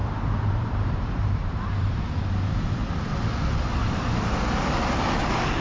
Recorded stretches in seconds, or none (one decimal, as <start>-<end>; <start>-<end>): 2.9-3.8